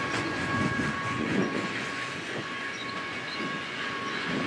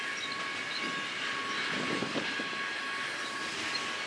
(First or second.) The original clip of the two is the second